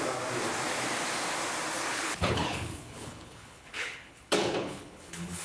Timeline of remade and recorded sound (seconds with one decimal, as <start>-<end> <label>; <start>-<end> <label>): 0.0-1.9 recorded; 1.9-5.4 remade